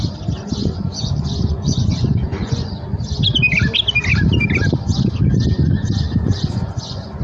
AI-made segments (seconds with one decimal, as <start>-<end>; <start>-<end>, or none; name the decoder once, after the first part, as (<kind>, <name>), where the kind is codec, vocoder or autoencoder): 0.6-2.7 (vocoder, Vocos); 5.8-7.2